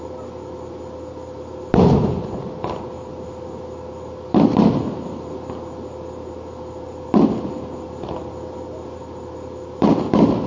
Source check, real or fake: real